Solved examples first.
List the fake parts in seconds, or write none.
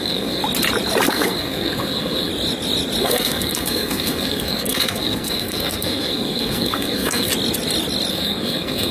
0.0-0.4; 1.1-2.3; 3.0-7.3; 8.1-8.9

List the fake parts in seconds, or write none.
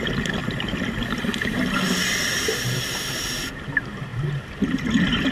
0.0-0.4; 3.6-5.3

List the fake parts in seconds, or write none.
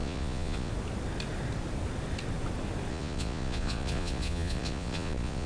0.0-0.7; 2.9-5.5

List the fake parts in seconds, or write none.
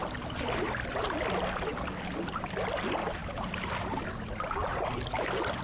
none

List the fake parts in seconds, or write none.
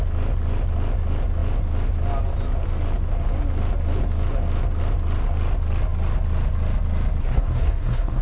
7.2-8.2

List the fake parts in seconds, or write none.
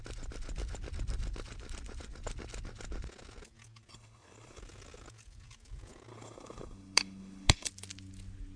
3.9-4.6; 6.1-7.7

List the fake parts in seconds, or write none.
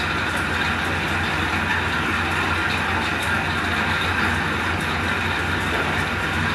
none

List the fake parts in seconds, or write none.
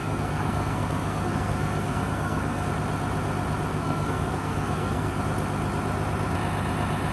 0.0-2.7; 3.7-5.2